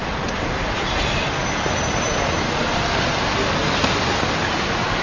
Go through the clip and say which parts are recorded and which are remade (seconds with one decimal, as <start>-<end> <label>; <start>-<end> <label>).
0.0-5.0 recorded